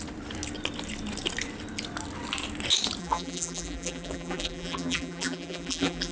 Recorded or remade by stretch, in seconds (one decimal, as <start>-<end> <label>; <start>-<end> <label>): 0.0-3.0 recorded; 3.0-6.1 remade